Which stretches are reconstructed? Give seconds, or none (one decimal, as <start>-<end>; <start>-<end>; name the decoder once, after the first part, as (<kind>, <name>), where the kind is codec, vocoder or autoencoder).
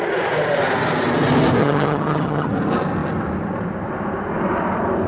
1.6-2.5 (vocoder, HiFi-GAN)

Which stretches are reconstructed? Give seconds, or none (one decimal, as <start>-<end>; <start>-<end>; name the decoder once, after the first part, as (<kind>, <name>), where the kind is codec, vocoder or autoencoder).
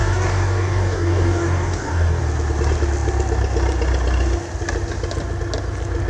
0.0-2.2 (codec, DAC)